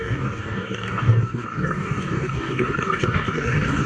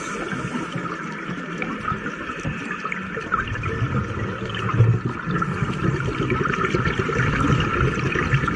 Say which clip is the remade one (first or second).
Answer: first